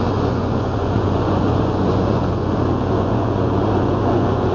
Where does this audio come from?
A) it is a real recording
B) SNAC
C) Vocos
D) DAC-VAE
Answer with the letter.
C